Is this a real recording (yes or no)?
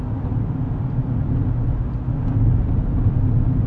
yes